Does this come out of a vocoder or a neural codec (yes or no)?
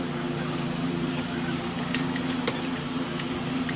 yes